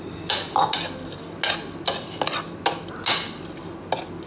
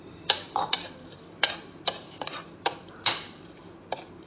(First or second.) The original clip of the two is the first